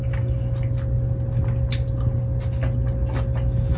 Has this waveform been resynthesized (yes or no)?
no